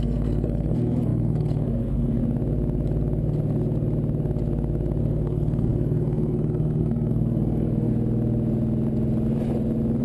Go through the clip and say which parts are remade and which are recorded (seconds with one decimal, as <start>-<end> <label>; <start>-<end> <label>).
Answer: 0.0-2.2 remade; 2.2-5.0 recorded; 5.0-7.9 remade; 7.9-10.0 recorded